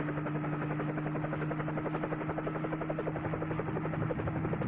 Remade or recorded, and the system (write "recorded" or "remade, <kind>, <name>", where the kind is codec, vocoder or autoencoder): recorded